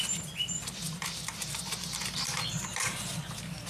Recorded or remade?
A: remade